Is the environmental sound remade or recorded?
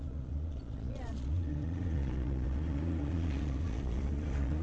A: remade